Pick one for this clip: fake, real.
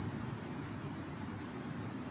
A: real